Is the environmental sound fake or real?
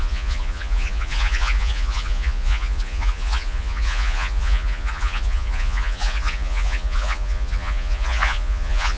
fake